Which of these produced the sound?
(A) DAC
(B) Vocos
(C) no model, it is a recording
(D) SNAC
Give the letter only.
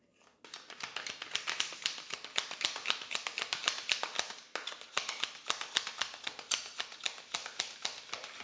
C